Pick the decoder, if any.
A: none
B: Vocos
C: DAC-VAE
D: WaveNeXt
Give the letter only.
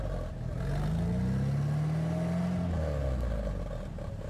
A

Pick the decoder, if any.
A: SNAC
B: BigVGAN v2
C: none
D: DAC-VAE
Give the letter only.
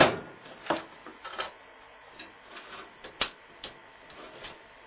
C